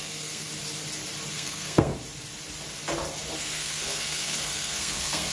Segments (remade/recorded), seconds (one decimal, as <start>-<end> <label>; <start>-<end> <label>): 0.0-0.5 remade; 0.5-1.3 recorded; 1.3-1.9 remade; 1.9-3.4 recorded; 3.4-5.3 remade